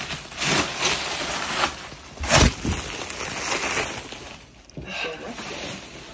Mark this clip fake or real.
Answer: real